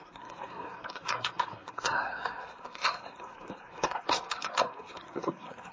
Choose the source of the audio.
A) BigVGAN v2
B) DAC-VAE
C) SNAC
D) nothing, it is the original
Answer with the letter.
C